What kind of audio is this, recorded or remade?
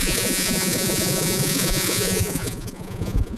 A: remade